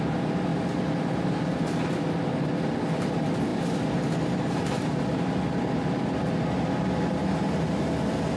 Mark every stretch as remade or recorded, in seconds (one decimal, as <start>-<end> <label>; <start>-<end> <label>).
0.0-8.4 recorded